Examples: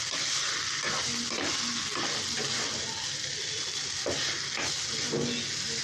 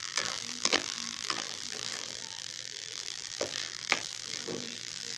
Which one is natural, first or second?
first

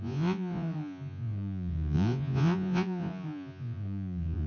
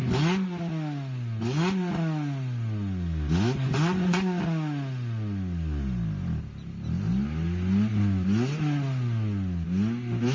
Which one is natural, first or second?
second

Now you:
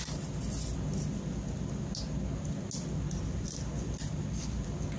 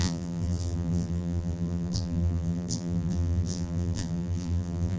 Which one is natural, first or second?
first